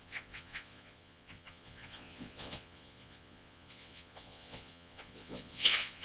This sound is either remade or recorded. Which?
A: remade